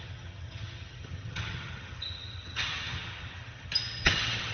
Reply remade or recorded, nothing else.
remade